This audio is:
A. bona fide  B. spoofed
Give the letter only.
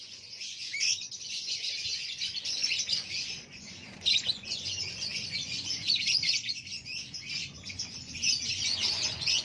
B